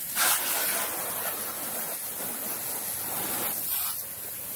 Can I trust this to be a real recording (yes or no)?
yes